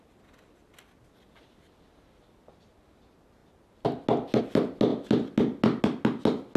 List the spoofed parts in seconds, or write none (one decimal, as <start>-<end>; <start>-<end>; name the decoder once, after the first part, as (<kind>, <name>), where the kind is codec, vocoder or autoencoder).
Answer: none